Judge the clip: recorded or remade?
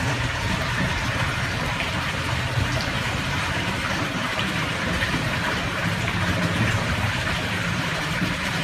remade